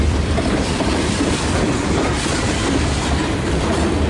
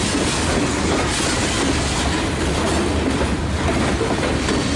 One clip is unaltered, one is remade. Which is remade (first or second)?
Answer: first